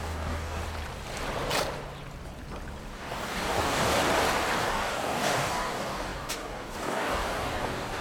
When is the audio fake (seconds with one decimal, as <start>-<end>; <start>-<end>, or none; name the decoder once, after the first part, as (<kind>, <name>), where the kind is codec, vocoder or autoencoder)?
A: 0.0-0.6 (codec, DAC); 2.9-4.0; 4.6-8.0